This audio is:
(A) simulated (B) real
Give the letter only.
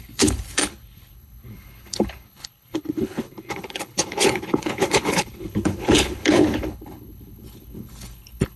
A